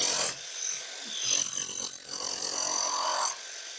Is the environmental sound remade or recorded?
recorded